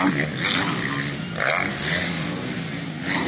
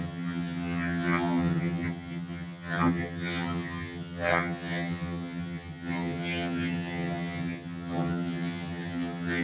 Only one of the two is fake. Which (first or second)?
second